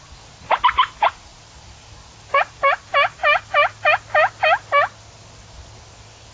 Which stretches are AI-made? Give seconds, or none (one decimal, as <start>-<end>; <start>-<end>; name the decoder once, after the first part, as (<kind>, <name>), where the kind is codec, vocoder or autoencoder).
none